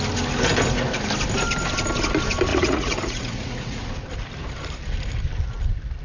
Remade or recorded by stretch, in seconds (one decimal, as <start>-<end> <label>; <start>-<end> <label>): 0.0-2.5 recorded; 2.5-3.9 remade; 3.9-6.0 recorded